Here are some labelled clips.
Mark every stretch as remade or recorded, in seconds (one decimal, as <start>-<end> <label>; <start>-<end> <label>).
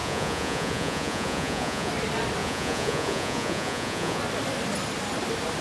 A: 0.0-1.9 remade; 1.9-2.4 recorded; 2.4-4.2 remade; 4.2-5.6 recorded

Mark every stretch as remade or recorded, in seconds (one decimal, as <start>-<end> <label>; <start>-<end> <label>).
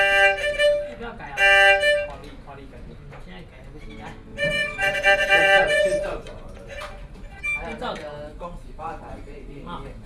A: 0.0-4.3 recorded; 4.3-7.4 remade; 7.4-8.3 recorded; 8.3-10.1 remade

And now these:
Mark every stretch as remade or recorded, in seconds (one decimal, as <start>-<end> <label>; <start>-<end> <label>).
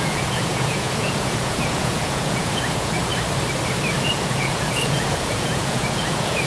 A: 0.0-3.1 remade; 3.1-4.0 recorded; 4.0-6.5 remade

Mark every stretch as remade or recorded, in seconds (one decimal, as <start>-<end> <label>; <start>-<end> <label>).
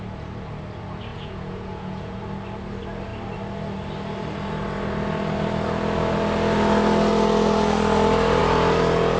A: 0.0-1.1 recorded; 1.1-2.2 remade; 2.2-9.2 recorded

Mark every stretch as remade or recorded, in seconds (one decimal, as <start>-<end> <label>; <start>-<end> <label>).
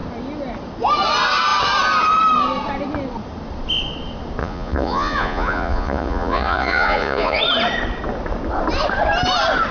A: 0.0-4.4 recorded; 4.4-7.4 remade; 7.4-9.7 recorded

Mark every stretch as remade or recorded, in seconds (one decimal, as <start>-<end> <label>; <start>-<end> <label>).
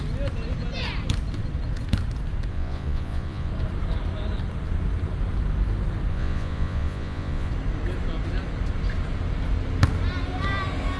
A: 0.0-2.5 recorded; 2.5-3.5 remade; 3.5-6.1 recorded; 6.1-7.5 remade; 7.5-11.0 recorded